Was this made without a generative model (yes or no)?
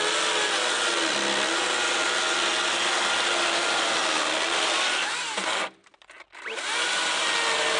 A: yes